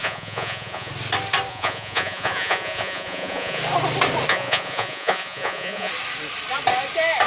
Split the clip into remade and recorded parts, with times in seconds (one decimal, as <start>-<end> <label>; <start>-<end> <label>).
0.0-0.9 remade; 0.9-1.5 recorded; 1.5-3.6 remade; 3.6-4.3 recorded; 4.3-5.9 remade; 5.9-7.3 recorded